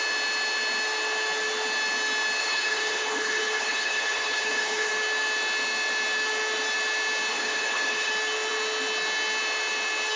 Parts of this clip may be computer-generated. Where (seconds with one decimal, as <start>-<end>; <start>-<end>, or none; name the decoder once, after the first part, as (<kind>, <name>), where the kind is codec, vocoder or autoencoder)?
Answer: 2.4-4.9 (codec, HILCodec); 7.3-8.1